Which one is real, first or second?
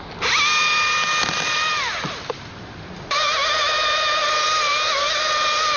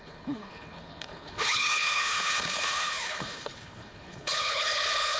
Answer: first